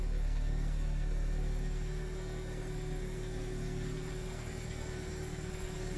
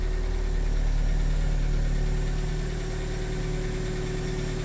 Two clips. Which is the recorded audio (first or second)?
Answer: second